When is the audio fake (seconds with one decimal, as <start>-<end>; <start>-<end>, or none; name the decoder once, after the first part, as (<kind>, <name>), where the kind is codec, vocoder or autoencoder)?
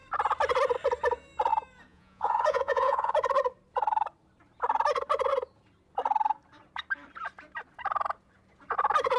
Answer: 1.9-3.1 (vocoder, Vocos)